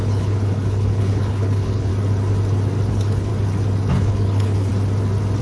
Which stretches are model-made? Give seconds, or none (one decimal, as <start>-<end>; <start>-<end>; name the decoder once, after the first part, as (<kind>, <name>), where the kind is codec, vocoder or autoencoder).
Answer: 0.0-1.9 (codec, HILCodec); 2.9-3.3; 3.9-4.7